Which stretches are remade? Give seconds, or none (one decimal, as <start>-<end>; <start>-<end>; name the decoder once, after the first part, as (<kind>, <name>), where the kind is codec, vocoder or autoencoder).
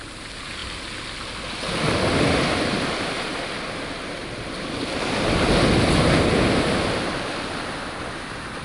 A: none